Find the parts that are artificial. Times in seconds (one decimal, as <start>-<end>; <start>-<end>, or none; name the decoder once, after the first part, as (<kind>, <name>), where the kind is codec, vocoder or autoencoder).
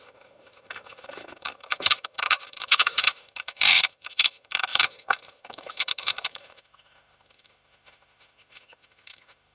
0.0-9.5 (autoencoder, DAC-VAE)